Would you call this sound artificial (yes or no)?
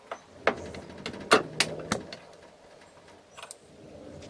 no